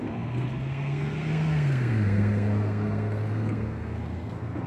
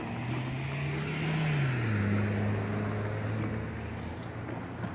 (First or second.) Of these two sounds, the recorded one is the second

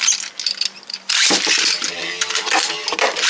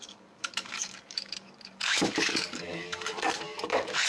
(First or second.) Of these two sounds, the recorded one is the first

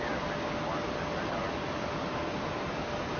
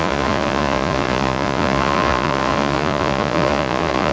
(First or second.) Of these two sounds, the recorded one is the first